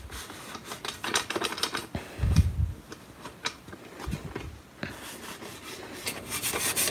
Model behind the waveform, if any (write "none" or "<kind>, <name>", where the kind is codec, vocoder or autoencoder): none